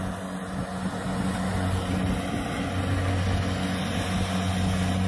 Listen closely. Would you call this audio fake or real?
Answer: real